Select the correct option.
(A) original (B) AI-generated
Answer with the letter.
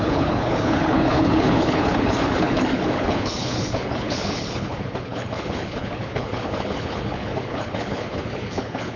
B